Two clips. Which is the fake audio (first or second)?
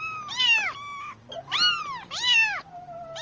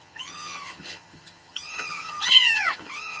second